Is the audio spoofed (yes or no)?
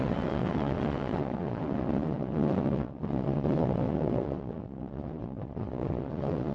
yes